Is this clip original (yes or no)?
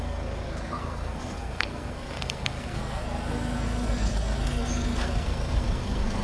no